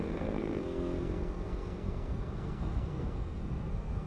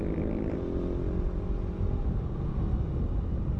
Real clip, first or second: second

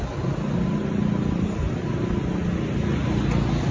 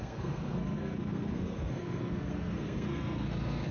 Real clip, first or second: first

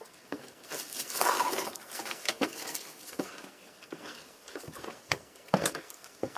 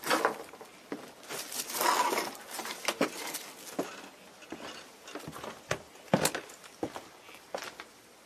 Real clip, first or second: second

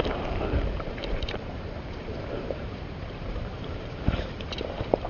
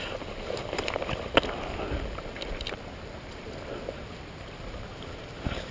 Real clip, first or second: second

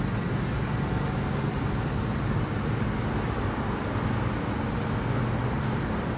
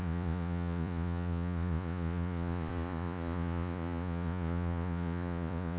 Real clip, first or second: first